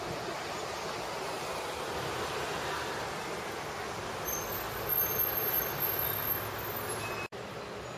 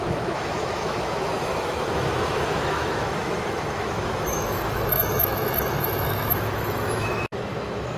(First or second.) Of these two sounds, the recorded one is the first